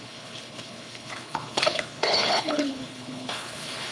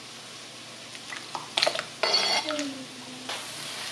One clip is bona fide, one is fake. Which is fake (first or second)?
first